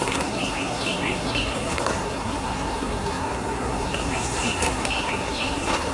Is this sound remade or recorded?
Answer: remade